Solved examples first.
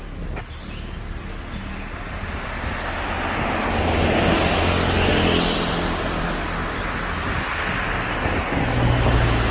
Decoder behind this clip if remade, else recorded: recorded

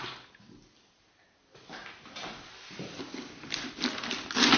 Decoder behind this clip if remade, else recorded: recorded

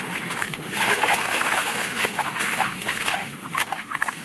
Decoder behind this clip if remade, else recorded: remade, autoencoder, DAC-VAE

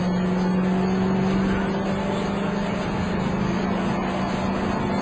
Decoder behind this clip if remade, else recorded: recorded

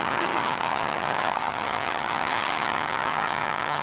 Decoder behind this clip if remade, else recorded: remade, vocoder, HiFi-GAN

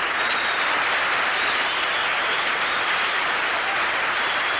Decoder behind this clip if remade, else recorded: recorded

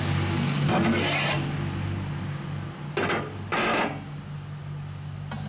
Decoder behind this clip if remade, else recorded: recorded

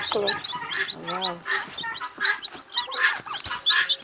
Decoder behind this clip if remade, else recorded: recorded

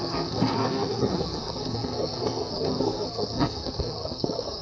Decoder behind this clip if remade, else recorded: remade, codec, SNAC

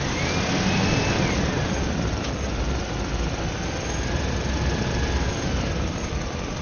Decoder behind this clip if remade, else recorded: recorded